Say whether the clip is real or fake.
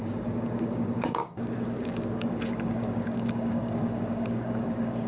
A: fake